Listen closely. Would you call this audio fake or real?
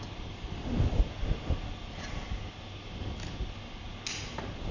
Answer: real